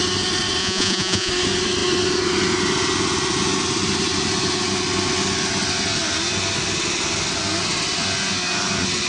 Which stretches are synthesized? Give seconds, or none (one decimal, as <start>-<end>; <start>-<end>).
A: 0.6-1.3